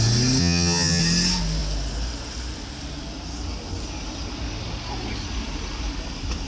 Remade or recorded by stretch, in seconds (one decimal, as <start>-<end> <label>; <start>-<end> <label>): 0.0-0.4 recorded; 0.4-1.0 remade; 1.0-6.5 recorded

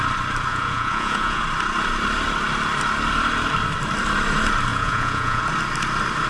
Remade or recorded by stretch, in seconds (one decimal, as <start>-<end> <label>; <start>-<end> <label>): 0.0-0.5 recorded; 0.5-1.4 remade; 1.4-4.7 recorded; 4.7-5.4 remade; 5.4-6.3 recorded

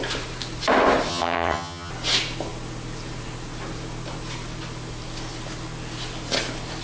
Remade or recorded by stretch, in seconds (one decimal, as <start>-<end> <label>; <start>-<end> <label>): 0.0-1.1 recorded; 1.1-1.9 remade; 1.9-6.8 recorded